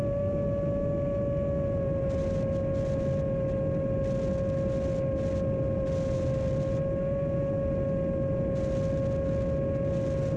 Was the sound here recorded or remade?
recorded